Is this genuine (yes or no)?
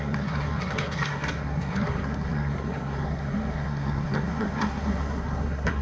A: no